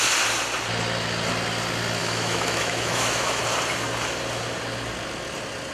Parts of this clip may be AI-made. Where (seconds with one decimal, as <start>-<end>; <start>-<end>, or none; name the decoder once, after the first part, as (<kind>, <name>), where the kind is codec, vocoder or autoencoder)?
2.0-3.4 (autoencoder, DAC-VAE)